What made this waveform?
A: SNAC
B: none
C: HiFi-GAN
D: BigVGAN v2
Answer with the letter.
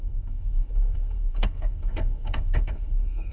A